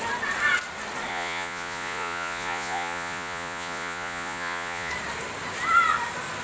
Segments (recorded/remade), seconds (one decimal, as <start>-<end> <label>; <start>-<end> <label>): 0.0-1.1 recorded; 1.1-4.9 remade; 4.9-6.4 recorded